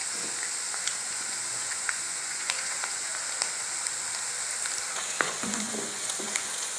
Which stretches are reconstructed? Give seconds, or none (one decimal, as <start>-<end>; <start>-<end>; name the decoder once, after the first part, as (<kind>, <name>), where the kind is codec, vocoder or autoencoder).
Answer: 1.0-3.1 (vocoder, Vocos); 4.9-6.8